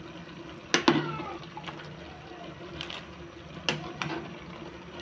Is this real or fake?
real